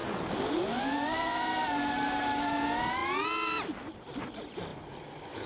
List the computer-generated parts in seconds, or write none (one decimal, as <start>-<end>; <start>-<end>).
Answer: none